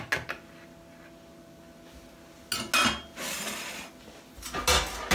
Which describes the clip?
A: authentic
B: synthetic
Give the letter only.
A